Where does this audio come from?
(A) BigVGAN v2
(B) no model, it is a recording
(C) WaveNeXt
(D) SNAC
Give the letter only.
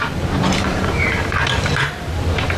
A